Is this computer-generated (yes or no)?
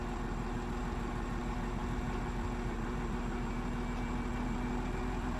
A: no